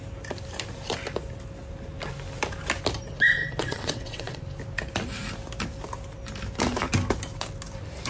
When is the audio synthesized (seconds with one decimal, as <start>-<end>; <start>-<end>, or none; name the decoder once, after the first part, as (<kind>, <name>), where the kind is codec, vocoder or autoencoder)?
3.4-4.4 (vocoder, WaveNeXt)